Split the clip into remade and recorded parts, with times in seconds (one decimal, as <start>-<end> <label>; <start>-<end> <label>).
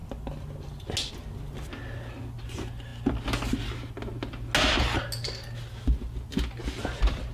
0.0-7.3 recorded